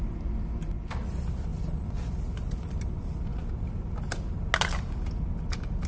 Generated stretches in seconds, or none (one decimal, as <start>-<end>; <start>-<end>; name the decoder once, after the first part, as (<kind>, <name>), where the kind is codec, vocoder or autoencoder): none